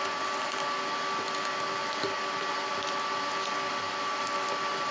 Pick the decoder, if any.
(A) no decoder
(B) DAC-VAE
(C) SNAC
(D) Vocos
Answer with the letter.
A